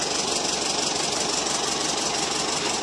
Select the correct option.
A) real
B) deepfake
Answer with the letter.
A